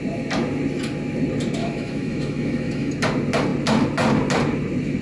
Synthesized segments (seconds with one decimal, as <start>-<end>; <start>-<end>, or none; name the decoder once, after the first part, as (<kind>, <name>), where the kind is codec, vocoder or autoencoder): 1.6-2.9 (autoencoder, DAC-VAE)